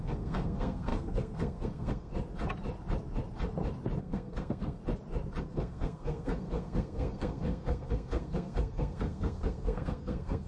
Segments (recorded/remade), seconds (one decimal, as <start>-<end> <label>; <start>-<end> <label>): 0.0-2.1 remade; 2.1-4.0 recorded; 4.0-4.8 remade; 4.8-5.4 recorded; 5.4-10.5 remade